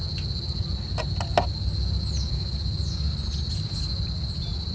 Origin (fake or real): real